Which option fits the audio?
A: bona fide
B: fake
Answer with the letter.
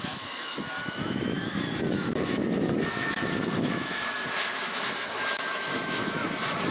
B